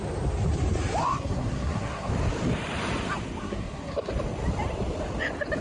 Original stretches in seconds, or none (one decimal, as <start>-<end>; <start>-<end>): 0.0-1.0; 2.1-3.4; 4.1-5.6